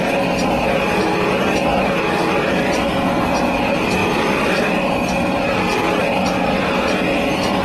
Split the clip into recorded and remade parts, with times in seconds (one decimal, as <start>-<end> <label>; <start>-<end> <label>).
0.0-4.0 recorded; 4.0-4.7 remade; 4.7-7.6 recorded